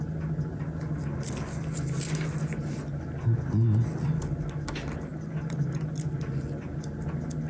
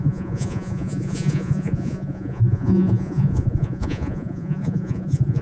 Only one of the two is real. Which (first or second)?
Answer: first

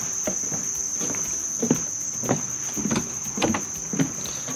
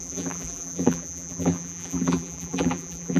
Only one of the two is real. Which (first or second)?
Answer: first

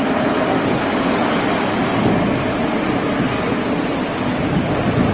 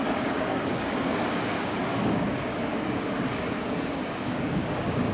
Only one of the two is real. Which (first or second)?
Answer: first